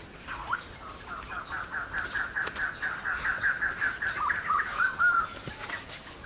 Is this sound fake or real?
real